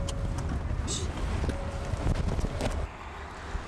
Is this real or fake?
real